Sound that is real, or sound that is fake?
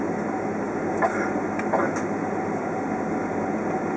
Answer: real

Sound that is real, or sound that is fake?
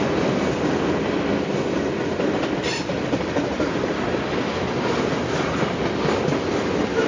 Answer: real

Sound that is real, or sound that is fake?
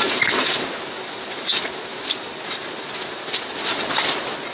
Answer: real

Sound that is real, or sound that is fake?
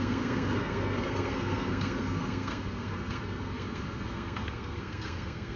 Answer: fake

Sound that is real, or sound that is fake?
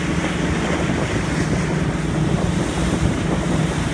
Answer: real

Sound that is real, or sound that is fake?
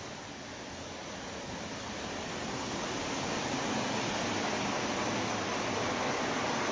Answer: real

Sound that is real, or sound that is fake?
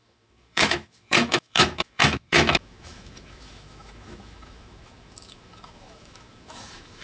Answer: fake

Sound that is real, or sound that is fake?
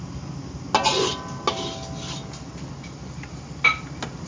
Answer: real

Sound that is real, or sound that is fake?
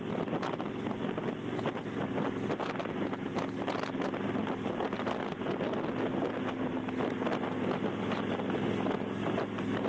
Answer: real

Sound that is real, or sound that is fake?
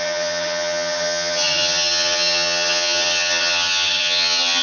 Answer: fake